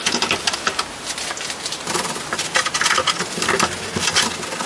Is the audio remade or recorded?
recorded